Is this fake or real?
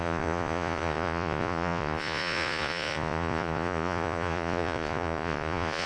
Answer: fake